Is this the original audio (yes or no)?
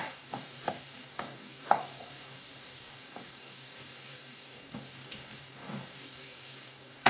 no